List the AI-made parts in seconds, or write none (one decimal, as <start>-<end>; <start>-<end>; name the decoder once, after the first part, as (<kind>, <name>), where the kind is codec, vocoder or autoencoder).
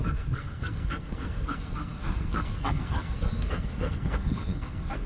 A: 0.0-5.1 (codec, SNAC)